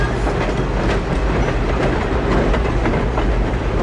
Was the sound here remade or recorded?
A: recorded